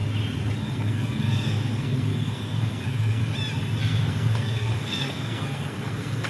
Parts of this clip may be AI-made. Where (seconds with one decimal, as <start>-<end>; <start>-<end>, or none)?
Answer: 0.6-3.2; 3.8-6.3